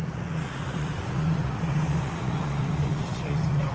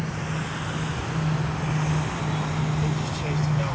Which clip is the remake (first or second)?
first